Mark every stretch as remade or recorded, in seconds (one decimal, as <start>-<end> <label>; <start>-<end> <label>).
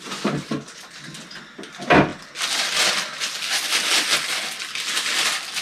0.0-5.6 recorded